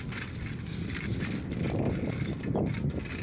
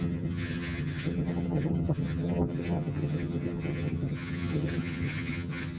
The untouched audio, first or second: first